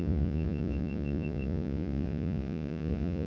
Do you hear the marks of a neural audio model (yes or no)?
yes